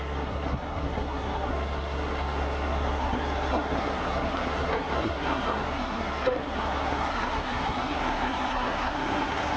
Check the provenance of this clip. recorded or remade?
remade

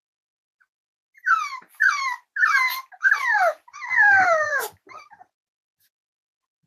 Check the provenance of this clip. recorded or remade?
recorded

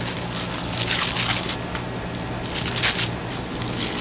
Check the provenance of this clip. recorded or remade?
recorded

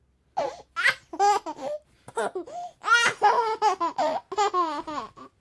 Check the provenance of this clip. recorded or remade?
recorded